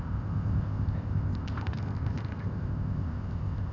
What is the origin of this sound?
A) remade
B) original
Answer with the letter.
A